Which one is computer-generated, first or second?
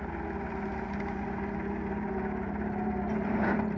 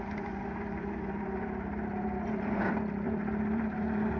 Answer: second